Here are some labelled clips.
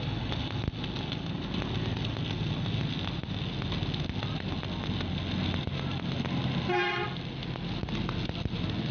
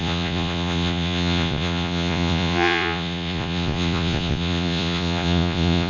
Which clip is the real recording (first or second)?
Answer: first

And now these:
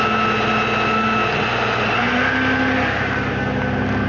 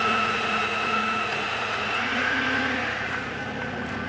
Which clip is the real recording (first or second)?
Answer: first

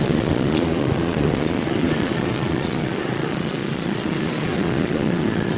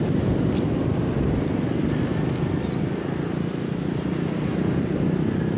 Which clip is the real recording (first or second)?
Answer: second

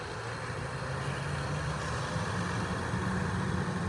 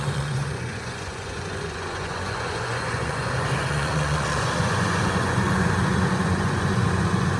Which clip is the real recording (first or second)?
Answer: first